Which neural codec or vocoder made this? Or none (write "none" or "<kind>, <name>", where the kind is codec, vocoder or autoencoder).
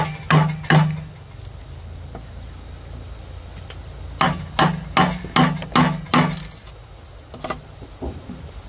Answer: none